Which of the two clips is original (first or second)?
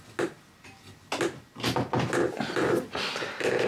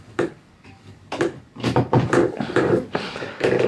first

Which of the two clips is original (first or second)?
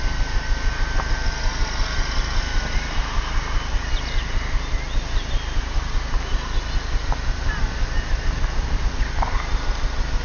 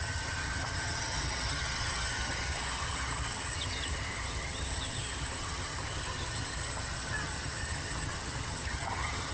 first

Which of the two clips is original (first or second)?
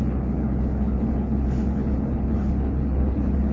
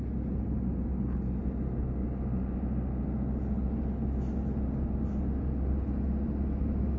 second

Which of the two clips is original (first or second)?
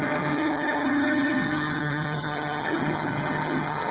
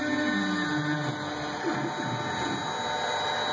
second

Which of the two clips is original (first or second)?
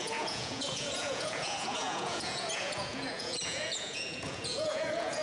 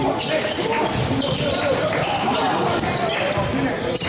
second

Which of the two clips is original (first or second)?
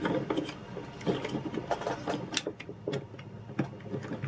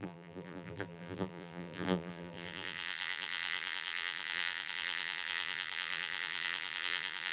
first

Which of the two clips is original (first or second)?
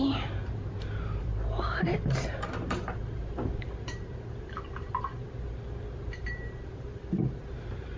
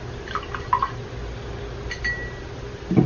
second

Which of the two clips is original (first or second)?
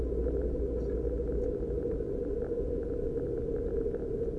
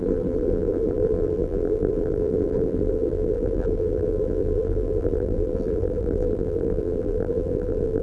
first